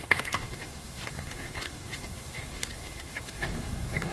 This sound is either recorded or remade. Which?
remade